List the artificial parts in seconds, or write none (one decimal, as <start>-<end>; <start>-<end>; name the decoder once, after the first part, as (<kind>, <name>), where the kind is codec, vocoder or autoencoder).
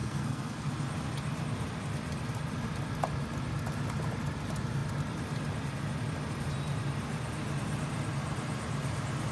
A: 0.0-0.7 (codec, SNAC)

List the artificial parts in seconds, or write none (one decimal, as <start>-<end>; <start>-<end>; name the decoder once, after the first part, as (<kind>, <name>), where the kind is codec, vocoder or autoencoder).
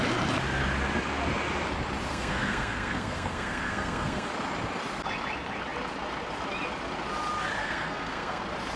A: 2.1-4.3 (codec, SNAC); 7.6-8.4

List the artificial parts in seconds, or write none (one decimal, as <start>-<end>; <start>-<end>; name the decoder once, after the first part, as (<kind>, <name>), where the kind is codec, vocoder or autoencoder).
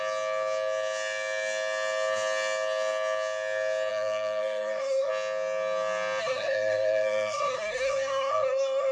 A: 3.9-5.1 (codec, SNAC); 6.2-8.9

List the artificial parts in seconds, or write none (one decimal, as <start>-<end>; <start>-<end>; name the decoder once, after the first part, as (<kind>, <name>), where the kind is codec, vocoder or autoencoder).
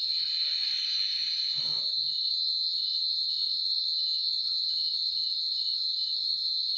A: none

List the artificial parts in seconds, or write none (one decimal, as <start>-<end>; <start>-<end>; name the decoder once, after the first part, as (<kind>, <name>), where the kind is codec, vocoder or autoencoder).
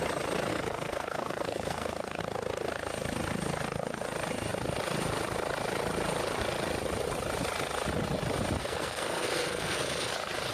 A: 0.5-2.2 (codec, SNAC); 8.6-10.1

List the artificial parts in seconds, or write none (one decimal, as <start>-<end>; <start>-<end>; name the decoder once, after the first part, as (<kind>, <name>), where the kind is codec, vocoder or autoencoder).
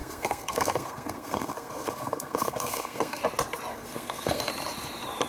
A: 0.0-3.2 (codec, SNAC); 3.7-4.5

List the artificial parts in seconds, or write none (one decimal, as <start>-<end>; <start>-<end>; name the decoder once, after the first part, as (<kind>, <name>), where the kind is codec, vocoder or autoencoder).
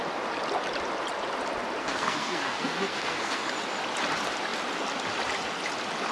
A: 1.8-3.5 (codec, SNAC)